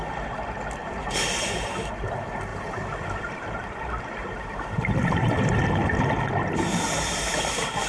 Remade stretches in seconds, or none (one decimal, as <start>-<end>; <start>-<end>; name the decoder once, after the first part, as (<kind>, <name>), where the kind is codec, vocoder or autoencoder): 0.8-1.3 (vocoder, BigVGAN v2); 2.5-7.2

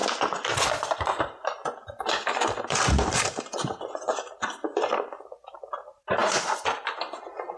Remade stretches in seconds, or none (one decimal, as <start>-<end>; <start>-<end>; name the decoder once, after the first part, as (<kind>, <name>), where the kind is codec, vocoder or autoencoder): 0.5-1.6 (vocoder, BigVGAN v2); 2.9-7.6